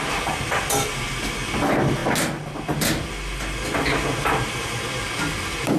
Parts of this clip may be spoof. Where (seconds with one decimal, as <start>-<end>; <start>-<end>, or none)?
none